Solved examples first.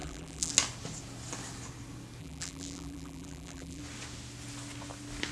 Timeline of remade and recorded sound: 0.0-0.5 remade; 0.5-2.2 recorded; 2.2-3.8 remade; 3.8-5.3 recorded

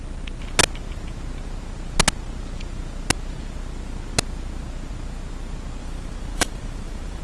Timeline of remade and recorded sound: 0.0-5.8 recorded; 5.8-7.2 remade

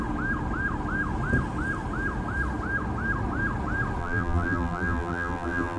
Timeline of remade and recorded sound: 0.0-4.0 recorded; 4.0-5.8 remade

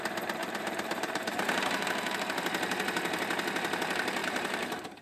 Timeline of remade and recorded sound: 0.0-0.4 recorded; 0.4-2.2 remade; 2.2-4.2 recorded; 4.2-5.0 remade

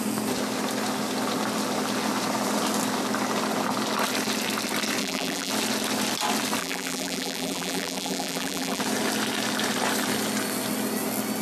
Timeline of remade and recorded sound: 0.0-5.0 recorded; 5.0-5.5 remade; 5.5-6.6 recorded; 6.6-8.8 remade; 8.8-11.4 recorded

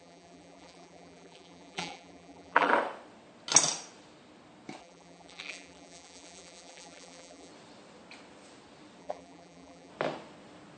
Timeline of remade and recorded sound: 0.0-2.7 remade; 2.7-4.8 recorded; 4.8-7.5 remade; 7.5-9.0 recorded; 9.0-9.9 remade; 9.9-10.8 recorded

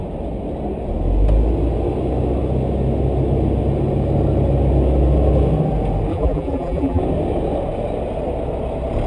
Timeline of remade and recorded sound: 0.0-6.1 recorded; 6.1-7.0 remade; 7.0-9.1 recorded

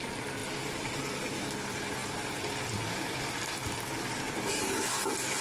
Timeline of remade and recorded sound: 0.0-5.4 recorded